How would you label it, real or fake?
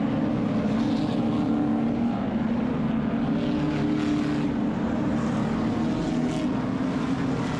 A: real